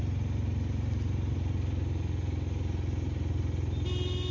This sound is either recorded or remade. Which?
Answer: recorded